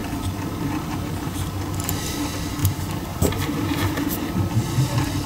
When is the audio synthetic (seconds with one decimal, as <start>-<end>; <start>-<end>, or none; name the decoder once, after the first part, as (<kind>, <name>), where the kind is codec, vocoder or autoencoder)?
2.6-4.3 (vocoder, BigVGAN v2)